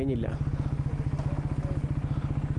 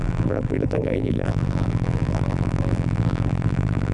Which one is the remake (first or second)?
second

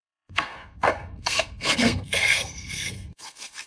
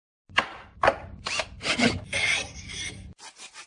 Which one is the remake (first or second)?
first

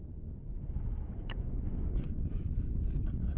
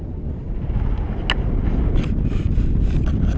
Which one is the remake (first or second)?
first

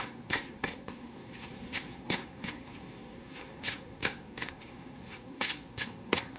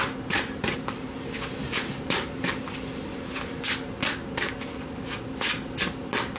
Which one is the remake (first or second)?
first